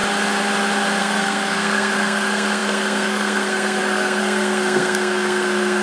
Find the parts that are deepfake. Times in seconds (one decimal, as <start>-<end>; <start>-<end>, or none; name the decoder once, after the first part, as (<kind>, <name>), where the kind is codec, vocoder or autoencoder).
1.0-5.8 (codec, SNAC)